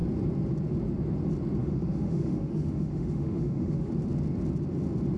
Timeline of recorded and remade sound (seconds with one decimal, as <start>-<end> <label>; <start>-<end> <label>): 0.0-1.6 recorded; 1.6-3.9 remade; 3.9-5.2 recorded